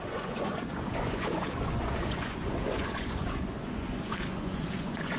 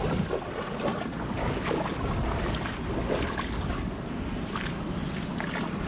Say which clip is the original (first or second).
second